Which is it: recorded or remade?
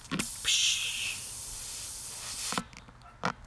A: recorded